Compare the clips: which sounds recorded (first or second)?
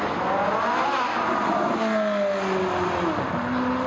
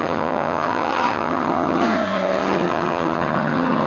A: first